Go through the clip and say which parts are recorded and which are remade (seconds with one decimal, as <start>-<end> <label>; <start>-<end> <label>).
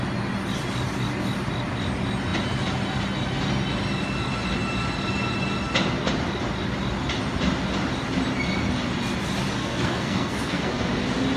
0.0-9.6 recorded; 9.6-10.9 remade; 10.9-11.4 recorded